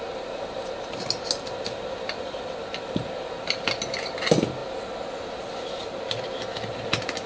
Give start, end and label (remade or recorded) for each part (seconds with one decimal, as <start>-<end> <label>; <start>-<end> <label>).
0.0-7.3 recorded